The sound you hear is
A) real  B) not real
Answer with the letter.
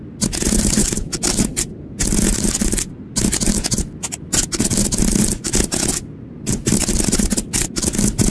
A